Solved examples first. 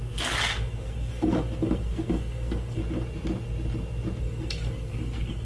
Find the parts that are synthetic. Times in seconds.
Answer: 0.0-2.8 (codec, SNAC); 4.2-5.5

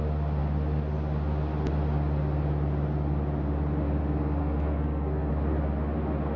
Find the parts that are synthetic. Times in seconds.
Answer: 4.4-5.3 (codec, SNAC)

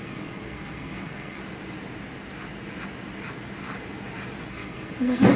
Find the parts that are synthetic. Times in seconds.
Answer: 0.0-1.4 (codec, SNAC); 4.5-5.4

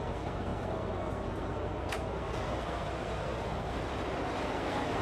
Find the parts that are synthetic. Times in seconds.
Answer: 0.0-3.9 (codec, SNAC); 4.4-5.0

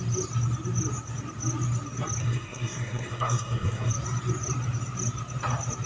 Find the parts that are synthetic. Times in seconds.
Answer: 2.2-3.9 (codec, SNAC)

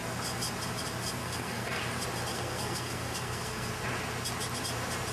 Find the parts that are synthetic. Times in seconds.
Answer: 1.2-1.8 (codec, SNAC); 2.3-3.7